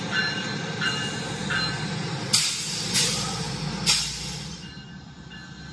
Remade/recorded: recorded